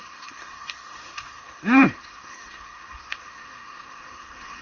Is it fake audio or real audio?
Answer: fake